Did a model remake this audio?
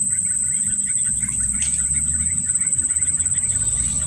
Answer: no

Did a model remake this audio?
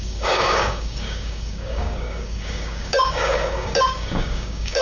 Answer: yes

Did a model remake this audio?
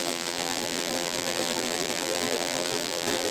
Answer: yes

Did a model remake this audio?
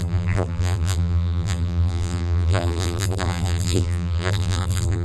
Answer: yes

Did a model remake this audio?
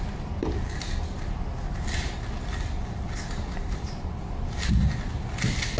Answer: no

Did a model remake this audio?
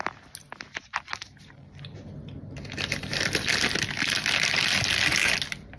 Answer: no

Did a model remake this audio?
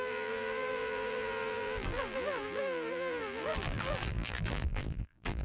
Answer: yes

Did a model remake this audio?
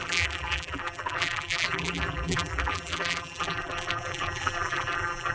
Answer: yes